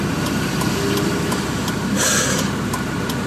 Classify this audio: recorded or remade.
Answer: recorded